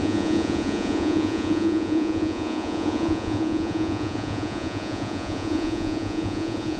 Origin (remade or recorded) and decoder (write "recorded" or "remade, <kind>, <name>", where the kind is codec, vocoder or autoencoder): remade, vocoder, Vocos